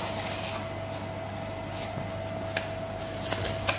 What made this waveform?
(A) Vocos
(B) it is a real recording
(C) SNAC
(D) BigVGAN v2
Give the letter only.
B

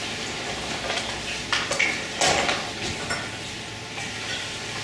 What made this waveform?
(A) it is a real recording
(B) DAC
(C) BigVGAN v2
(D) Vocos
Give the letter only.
A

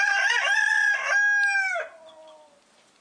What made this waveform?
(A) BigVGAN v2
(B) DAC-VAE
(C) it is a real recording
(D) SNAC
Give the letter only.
C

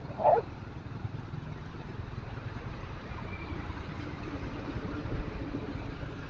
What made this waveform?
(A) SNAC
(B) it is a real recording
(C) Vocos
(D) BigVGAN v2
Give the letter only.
D